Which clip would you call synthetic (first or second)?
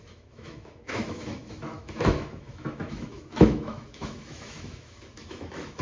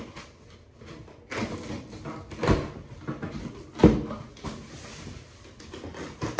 first